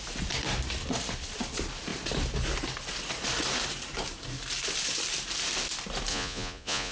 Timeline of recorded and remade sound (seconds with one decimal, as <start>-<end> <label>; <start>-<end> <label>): 0.0-6.1 recorded; 6.1-6.9 remade